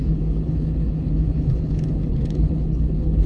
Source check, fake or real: fake